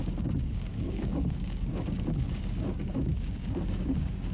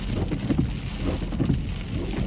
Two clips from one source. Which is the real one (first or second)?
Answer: second